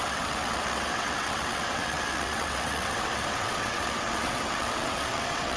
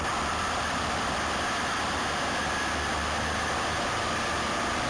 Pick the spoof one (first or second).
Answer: first